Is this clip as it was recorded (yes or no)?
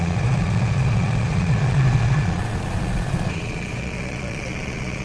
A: no